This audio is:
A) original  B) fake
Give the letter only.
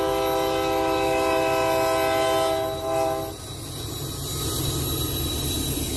A